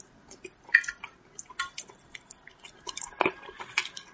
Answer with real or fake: real